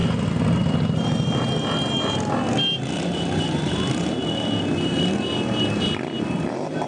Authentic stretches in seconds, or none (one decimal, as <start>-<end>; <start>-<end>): 0.0-0.6; 4.2-6.4